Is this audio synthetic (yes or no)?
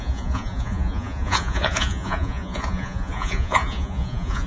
yes